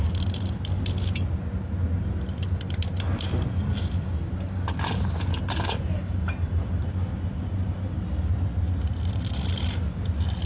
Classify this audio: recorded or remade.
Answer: recorded